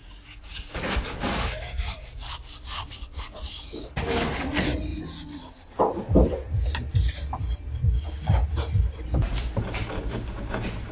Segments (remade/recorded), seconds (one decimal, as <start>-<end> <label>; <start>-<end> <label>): 0.0-4.3 remade; 4.3-10.9 recorded